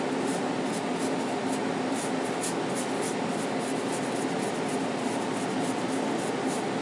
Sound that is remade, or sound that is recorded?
recorded